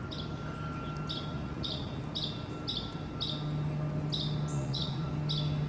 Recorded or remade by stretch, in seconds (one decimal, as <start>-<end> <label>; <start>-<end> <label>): 0.0-1.3 recorded; 1.3-2.0 remade; 2.0-4.5 recorded; 4.5-5.1 remade; 5.1-5.7 recorded